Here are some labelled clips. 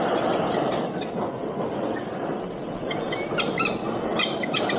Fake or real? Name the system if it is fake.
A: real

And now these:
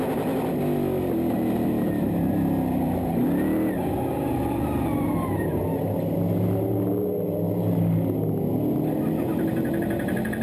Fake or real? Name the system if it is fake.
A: real